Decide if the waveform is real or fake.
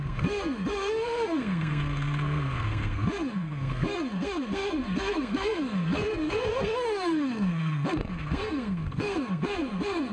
fake